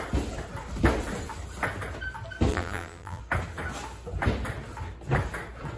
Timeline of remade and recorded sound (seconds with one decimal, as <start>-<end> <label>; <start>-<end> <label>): 0.0-2.5 recorded; 2.5-3.2 remade; 3.2-5.8 recorded